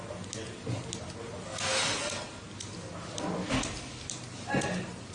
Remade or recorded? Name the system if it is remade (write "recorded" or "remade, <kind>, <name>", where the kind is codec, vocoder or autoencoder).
recorded